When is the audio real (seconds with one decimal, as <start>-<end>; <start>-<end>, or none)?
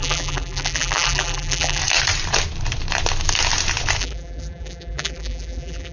1.8-4.0